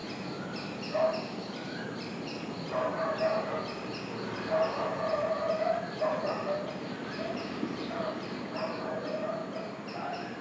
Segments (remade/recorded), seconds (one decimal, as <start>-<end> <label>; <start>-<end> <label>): 0.0-1.4 recorded; 1.4-2.9 remade; 2.9-4.2 recorded; 4.2-9.4 remade; 9.4-9.9 recorded; 9.9-10.4 remade